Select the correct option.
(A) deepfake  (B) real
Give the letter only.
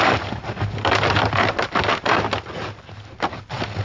B